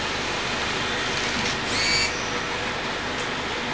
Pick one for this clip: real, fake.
real